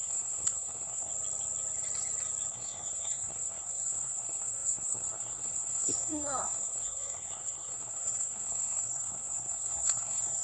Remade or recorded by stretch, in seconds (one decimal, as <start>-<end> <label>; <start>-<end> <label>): 0.0-1.1 remade; 1.1-2.5 recorded; 2.5-10.4 remade